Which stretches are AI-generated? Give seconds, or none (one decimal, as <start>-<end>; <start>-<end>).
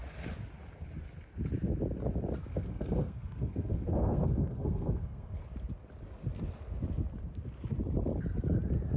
2.5-5.4